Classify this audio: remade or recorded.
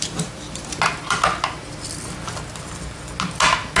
recorded